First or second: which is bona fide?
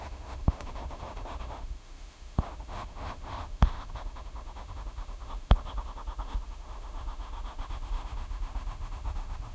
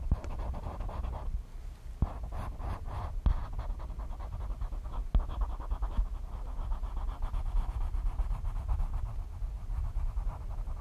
second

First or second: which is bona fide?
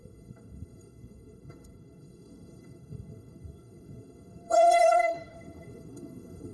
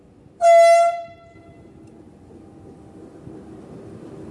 second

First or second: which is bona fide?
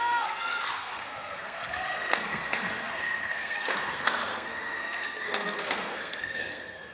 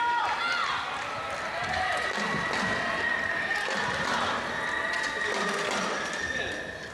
second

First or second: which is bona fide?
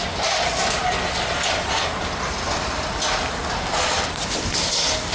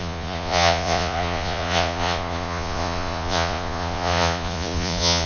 first